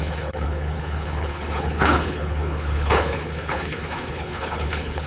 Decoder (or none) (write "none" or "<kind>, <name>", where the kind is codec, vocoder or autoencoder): codec, HILCodec